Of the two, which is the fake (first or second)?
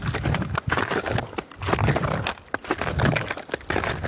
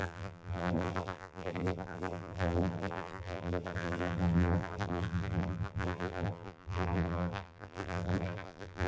second